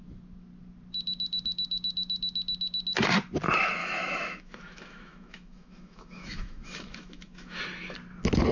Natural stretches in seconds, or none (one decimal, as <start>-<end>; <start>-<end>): 0.0-3.8; 7.6-8.5